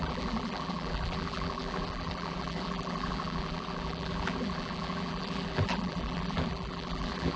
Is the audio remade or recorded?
remade